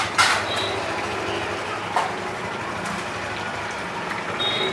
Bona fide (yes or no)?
yes